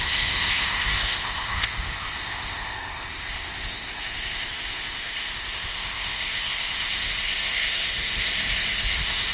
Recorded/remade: remade